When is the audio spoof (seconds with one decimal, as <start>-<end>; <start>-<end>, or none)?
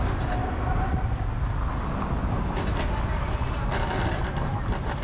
none